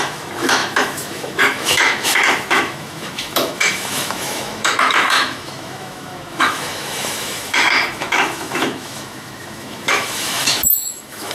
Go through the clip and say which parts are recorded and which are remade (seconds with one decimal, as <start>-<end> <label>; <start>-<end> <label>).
0.0-11.3 remade